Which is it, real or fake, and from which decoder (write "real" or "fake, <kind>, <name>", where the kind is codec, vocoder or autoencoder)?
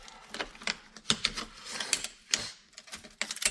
real